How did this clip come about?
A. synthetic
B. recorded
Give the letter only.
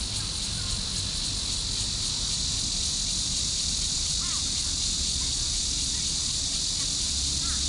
B